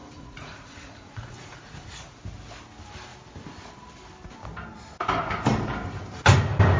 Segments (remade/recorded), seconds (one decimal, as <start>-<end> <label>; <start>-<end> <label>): 0.0-2.2 remade; 2.2-6.8 recorded

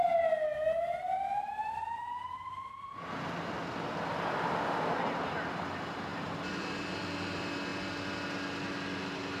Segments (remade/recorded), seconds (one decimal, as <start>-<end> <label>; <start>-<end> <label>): 0.0-9.4 recorded

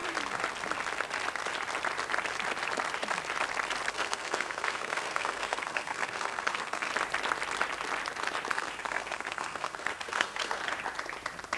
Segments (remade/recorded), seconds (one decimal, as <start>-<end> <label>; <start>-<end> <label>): 0.0-3.9 recorded; 3.9-6.9 remade; 6.9-8.5 recorded; 8.5-10.6 remade; 10.6-11.6 recorded